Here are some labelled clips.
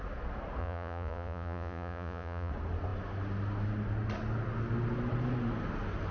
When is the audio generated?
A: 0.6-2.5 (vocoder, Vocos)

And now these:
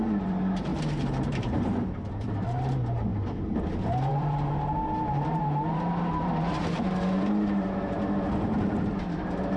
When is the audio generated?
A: 0.0-3.1 (vocoder, BigVGAN v2); 4.1-9.6

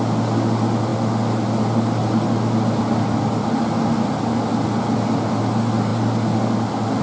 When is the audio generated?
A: none

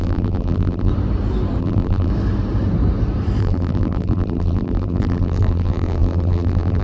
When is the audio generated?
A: 0.0-0.9 (vocoder, BigVGAN v2); 1.6-2.1; 3.4-6.8

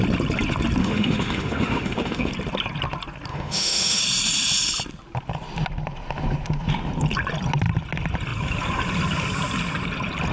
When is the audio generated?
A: 0.8-2.3 (autoencoder, DAC-VAE); 3.3-4.0

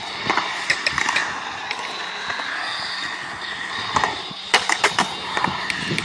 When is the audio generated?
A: 0.0-1.2 (vocoder, BigVGAN v2); 4.8-6.0

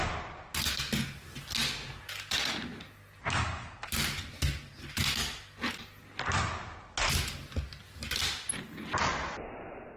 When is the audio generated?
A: none

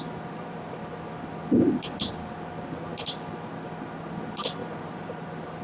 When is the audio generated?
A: 4.6-5.1 (vocoder, BigVGAN v2)